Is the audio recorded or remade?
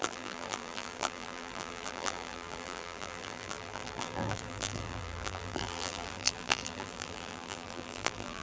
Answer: remade